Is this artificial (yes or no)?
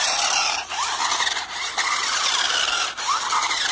no